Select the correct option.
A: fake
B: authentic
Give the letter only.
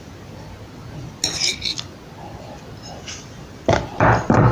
B